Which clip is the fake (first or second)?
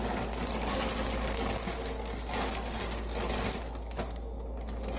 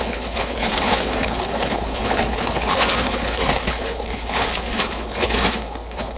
second